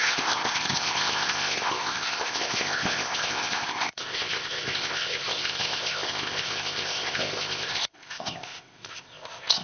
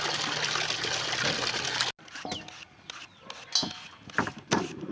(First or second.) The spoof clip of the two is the first